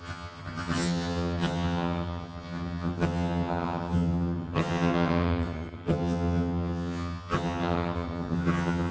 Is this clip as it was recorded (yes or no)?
no